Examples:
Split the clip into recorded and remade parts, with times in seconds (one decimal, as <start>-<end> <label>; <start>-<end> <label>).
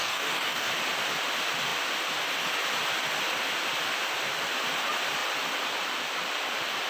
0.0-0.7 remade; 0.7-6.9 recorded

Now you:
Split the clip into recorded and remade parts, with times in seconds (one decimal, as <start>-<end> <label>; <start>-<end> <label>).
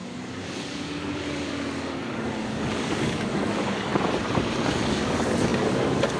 0.0-3.9 remade; 3.9-4.7 recorded; 4.7-6.2 remade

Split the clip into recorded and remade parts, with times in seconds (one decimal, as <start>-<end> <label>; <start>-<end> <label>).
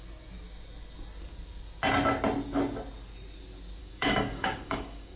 0.0-3.8 recorded; 3.8-5.2 remade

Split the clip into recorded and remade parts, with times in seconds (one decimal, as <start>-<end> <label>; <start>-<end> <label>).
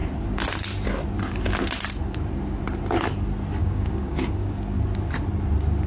0.0-3.6 recorded; 3.6-4.8 remade; 4.8-5.9 recorded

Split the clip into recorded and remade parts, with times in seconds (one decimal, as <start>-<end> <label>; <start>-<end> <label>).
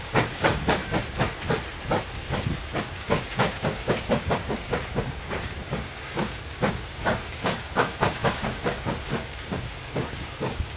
0.0-0.8 remade; 0.8-2.8 recorded; 2.8-10.8 remade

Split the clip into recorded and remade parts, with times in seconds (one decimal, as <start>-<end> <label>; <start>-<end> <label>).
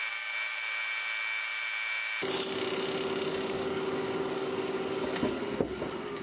0.0-3.3 recorded; 3.3-5.4 remade; 5.4-6.2 recorded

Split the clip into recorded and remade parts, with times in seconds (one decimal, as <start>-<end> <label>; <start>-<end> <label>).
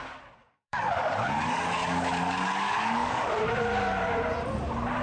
0.0-0.4 recorded; 0.4-3.4 remade; 3.4-5.0 recorded